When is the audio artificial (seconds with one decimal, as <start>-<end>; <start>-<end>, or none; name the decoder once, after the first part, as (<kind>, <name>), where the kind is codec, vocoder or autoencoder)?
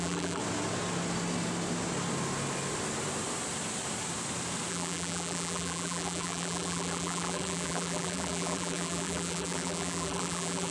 0.0-0.4 (vocoder, BigVGAN v2); 4.7-10.7